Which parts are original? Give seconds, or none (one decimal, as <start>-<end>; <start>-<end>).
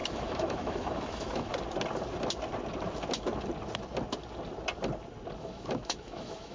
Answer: 1.5-5.4